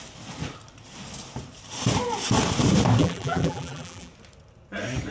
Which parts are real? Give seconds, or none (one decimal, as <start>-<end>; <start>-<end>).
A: 0.0-3.0; 4.1-5.1